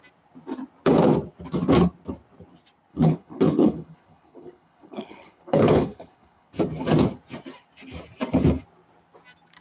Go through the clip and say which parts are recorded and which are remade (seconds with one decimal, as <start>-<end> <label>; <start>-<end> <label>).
0.0-2.9 recorded; 2.9-6.5 remade; 6.5-9.6 recorded